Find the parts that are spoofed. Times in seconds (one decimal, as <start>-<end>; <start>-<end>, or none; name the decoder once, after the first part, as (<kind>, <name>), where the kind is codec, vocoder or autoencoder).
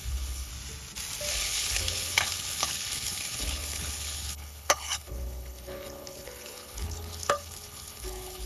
0.0-0.5 (codec, HILCodec); 1.3-8.5